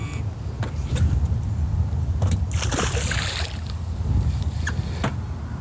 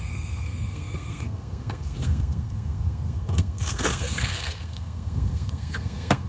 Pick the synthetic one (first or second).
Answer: second